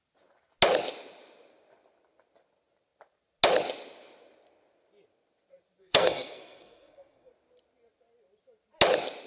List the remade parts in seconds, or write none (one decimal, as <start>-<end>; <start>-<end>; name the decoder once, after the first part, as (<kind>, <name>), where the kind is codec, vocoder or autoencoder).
5.8-7.3 (codec, SNAC)